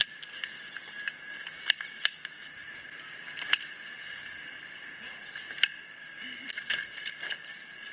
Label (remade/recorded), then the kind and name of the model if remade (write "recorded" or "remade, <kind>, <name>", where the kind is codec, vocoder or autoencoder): recorded